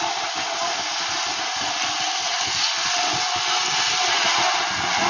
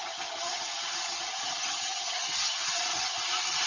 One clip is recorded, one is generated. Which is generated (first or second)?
second